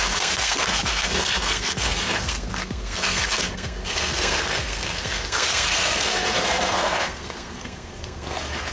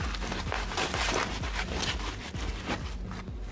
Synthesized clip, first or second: first